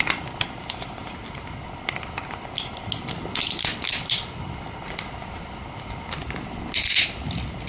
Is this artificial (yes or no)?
no